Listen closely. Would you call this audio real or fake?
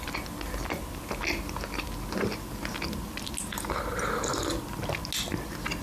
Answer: real